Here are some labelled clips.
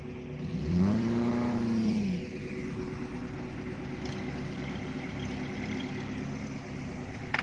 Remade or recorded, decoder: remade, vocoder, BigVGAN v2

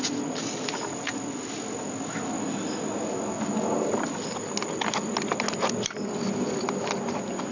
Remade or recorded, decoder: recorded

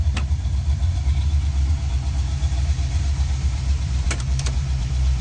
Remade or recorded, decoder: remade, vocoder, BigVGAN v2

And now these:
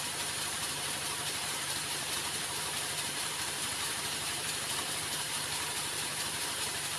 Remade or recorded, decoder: remade, vocoder, BigVGAN v2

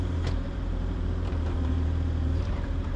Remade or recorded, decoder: remade, vocoder, BigVGAN v2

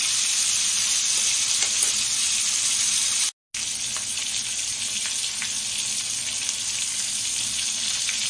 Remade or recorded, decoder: recorded